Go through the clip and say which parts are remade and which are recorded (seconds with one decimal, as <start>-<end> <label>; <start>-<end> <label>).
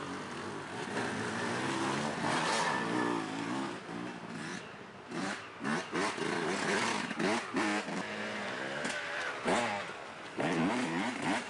0.0-11.5 recorded